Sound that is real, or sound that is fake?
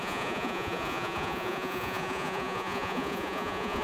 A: fake